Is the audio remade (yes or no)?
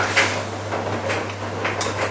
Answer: no